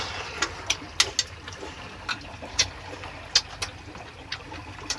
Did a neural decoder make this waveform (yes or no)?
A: no